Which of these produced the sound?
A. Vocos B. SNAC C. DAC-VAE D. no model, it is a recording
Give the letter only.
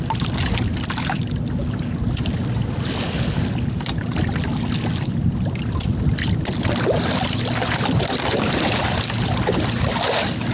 D